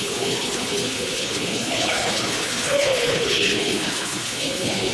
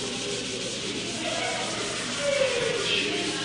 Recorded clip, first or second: second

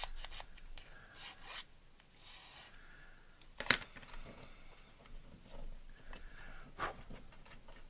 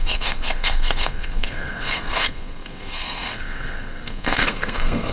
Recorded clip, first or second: first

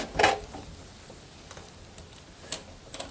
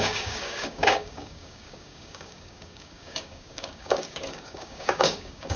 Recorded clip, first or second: first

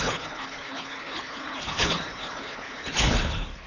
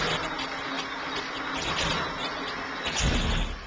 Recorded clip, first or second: second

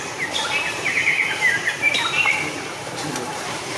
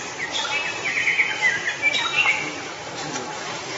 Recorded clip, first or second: second